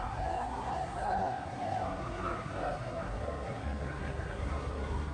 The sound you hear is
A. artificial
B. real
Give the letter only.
A